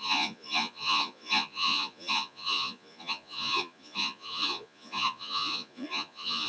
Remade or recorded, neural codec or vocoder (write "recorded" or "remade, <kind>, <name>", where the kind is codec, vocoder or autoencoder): remade, vocoder, Vocos